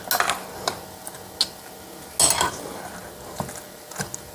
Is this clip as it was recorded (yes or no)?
yes